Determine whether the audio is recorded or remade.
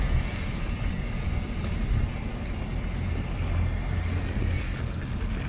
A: recorded